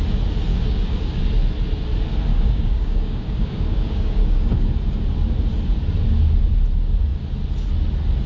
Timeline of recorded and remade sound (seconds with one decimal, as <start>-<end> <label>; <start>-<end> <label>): 0.0-0.5 recorded; 0.5-1.2 remade; 1.2-2.3 recorded; 2.3-4.7 remade; 4.7-8.3 recorded

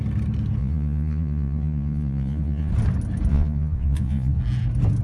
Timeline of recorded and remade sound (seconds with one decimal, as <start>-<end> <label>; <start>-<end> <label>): 0.0-0.6 recorded; 0.6-2.7 remade; 2.7-3.3 recorded; 3.3-4.4 remade; 4.4-5.0 recorded

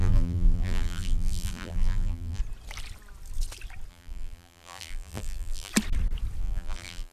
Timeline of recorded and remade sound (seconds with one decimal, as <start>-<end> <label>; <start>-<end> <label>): 0.0-2.4 remade; 2.4-3.9 recorded; 3.9-5.7 remade; 5.7-6.4 recorded; 6.4-7.1 remade

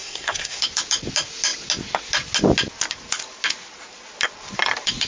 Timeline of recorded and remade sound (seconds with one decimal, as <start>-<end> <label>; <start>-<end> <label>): 0.0-0.6 remade; 0.6-5.1 recorded

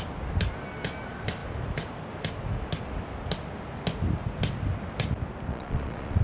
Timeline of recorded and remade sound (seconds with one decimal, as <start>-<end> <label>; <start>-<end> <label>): 0.0-5.5 recorded; 5.5-6.2 remade